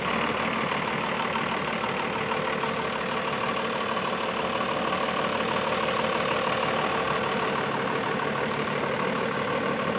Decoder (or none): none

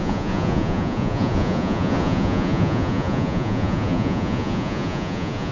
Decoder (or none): vocoder, Vocos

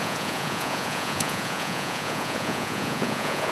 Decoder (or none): vocoder, Vocos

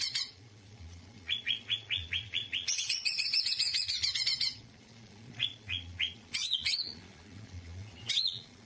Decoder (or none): vocoder, Vocos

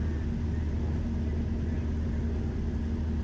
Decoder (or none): none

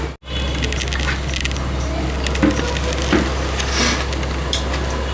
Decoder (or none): none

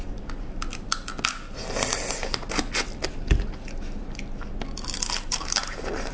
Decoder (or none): none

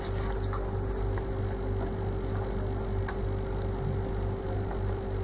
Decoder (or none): none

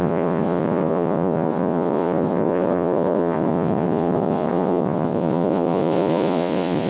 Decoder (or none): vocoder, Vocos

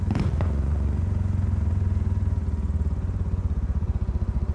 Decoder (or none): vocoder, Vocos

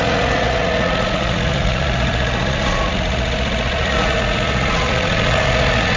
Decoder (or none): vocoder, Vocos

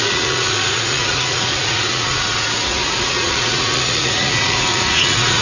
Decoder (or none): vocoder, Vocos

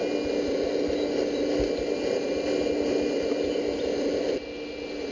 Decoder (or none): none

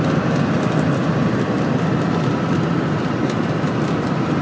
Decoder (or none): none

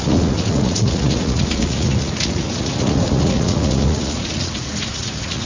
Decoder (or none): vocoder, Vocos